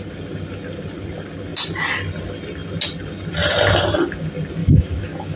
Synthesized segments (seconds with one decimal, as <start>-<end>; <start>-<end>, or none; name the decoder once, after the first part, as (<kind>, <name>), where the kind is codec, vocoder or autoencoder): 4.6-5.4 (autoencoder, DAC-VAE)

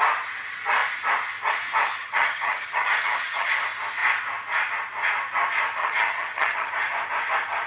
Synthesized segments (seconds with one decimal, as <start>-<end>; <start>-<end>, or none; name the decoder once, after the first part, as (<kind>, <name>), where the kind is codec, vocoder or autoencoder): 2.0-3.5 (vocoder, HiFi-GAN); 5.8-6.7

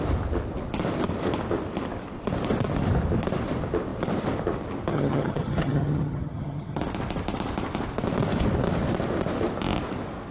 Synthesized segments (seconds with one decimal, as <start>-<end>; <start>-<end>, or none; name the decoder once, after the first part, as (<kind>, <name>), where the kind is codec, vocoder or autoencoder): 4.9-6.8 (vocoder, HiFi-GAN)

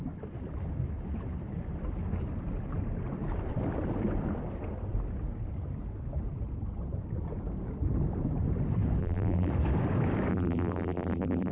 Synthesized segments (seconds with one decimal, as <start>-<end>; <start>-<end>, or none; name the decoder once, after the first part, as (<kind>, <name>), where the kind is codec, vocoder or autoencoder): 9.0-9.5 (vocoder, BigVGAN v2); 10.3-11.5

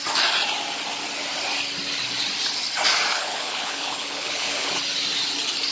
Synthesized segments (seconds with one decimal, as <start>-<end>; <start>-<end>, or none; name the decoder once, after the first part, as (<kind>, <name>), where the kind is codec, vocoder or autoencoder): 3.1-4.7 (codec, HILCodec)